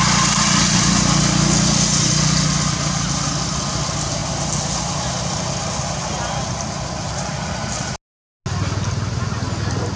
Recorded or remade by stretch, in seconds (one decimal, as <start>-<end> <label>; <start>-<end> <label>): 0.0-10.0 recorded